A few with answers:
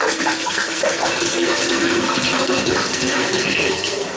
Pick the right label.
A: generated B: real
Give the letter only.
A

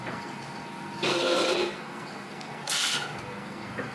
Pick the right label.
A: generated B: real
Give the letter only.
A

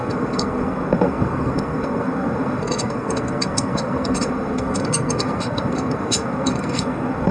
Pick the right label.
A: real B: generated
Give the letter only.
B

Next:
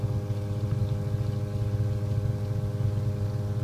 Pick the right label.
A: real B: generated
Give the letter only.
A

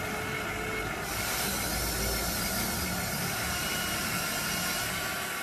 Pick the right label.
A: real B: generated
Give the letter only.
A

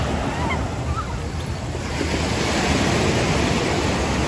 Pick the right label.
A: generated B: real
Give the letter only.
B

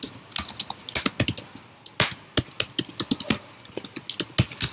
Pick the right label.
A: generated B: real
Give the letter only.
B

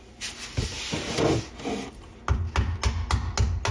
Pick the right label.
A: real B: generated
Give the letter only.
A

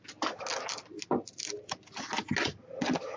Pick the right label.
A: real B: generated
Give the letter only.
A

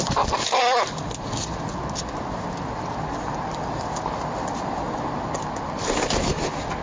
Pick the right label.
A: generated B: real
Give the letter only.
B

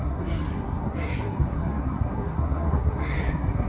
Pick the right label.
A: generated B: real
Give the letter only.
A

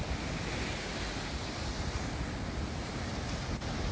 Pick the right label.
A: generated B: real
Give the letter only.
B